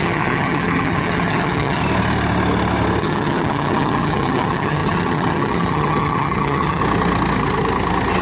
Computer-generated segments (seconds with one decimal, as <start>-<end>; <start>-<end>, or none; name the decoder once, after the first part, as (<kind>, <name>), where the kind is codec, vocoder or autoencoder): 0.0-1.8 (vocoder, HiFi-GAN); 3.0-6.8